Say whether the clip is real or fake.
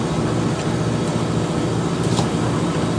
real